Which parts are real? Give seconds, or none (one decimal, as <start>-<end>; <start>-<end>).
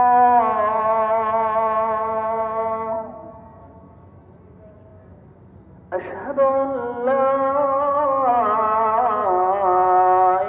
0.0-10.5